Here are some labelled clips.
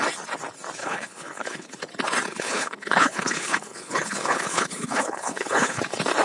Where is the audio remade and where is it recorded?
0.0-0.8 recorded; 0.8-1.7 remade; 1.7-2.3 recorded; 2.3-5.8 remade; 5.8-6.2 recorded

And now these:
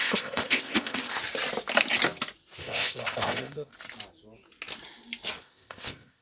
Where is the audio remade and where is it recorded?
0.0-1.2 remade; 1.2-2.6 recorded; 2.6-3.7 remade; 3.7-5.4 recorded; 5.4-6.2 remade